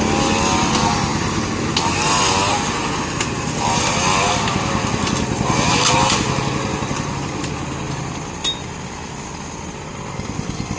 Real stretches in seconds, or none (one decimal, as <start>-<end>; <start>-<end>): 0.0-10.8